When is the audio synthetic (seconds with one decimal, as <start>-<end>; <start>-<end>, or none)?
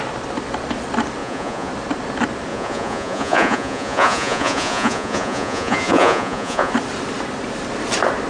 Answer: 1.2-1.7; 2.5-6.7